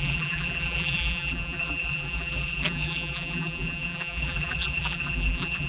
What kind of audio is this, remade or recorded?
remade